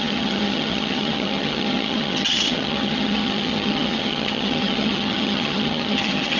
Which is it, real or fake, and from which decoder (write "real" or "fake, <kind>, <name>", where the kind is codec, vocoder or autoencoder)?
fake, vocoder, HiFi-GAN